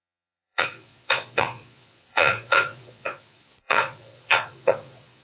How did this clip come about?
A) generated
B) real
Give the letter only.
A